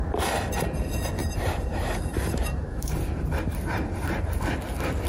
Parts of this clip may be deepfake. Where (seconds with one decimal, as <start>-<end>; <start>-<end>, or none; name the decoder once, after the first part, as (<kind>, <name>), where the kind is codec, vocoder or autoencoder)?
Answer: 1.2-4.3 (vocoder, BigVGAN v2)